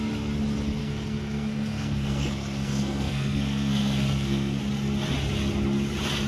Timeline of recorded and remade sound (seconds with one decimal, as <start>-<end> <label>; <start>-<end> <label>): 0.0-0.8 recorded; 0.8-4.6 remade; 4.6-6.3 recorded